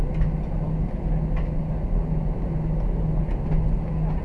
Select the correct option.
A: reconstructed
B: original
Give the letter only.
B